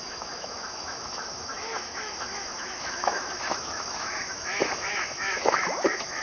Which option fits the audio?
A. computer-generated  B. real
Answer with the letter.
A